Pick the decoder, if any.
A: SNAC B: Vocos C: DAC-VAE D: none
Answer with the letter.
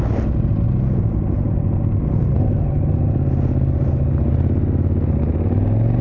D